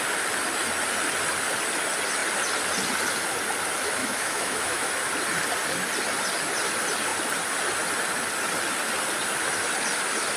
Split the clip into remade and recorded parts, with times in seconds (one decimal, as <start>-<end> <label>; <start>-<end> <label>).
0.0-4.0 recorded; 4.0-4.9 remade; 4.9-10.4 recorded